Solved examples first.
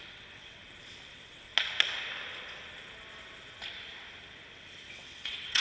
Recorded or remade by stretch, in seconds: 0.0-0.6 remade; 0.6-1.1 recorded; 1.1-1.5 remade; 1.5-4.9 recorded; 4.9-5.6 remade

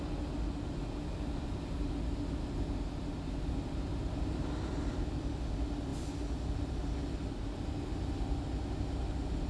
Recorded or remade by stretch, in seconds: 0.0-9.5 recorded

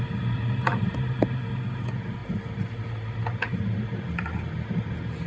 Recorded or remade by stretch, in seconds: 0.0-5.3 recorded

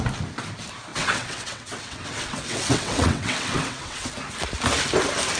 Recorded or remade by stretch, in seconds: 0.0-0.9 recorded; 0.9-4.1 remade; 4.1-5.4 recorded

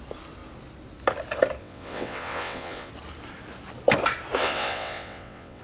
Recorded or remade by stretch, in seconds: 0.0-1.6 recorded; 1.6-2.9 remade; 2.9-4.4 recorded; 4.4-5.6 remade